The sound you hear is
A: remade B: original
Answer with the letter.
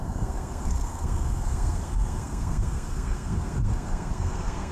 A